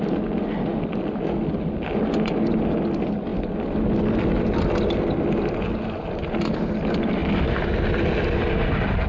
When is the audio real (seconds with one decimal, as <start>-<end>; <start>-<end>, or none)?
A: 0.0-9.1